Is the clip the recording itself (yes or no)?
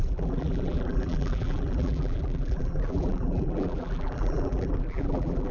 no